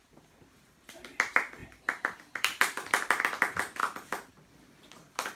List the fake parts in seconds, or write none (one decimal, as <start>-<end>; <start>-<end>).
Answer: 1.6-3.2